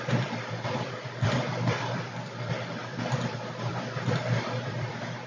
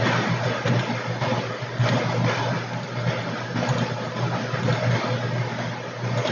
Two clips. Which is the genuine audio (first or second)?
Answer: second